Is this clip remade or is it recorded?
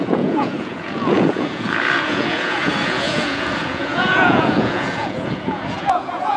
remade